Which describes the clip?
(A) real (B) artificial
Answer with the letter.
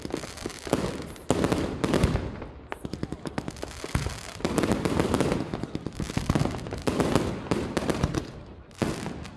A